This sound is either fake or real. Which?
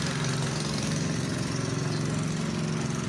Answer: real